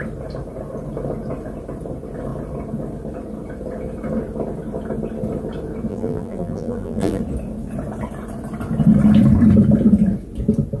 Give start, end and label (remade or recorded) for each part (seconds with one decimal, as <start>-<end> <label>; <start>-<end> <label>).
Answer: 0.0-5.9 recorded; 5.9-7.2 remade; 7.2-10.8 recorded